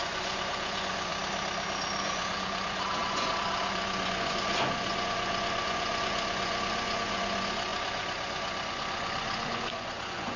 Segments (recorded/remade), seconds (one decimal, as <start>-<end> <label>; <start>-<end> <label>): 0.0-1.1 remade; 1.1-2.0 recorded; 2.0-10.4 remade